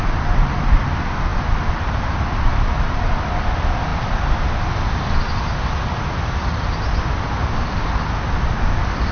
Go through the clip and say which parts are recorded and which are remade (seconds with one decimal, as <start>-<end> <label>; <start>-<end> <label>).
0.0-9.1 recorded